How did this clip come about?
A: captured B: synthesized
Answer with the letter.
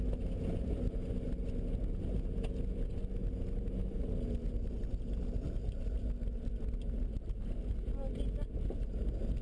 A